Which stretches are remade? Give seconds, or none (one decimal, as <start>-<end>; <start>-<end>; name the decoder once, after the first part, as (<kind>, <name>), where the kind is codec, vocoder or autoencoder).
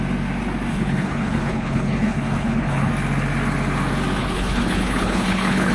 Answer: 0.7-2.9 (codec, HILCodec); 4.2-5.7